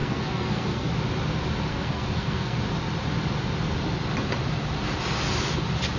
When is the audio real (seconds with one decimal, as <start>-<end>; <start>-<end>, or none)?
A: 0.9-1.7; 2.6-6.0